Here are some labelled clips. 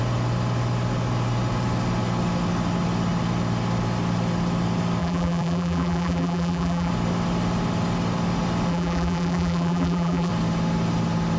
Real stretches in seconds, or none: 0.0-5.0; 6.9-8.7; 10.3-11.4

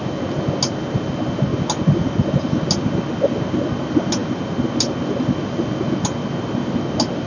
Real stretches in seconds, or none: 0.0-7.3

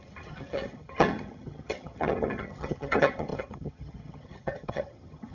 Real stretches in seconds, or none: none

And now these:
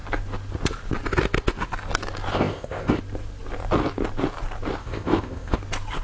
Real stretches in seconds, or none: 0.0-2.3; 3.0-4.8; 5.6-6.0

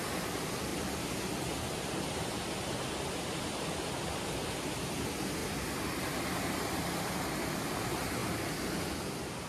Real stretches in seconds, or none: 0.0-8.2; 8.8-9.5